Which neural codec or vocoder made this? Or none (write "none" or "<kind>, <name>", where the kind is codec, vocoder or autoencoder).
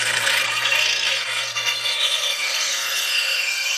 codec, SNAC